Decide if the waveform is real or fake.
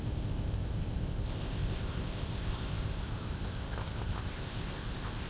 fake